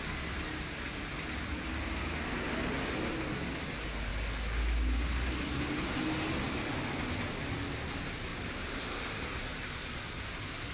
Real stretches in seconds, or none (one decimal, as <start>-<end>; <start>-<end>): 0.0-10.7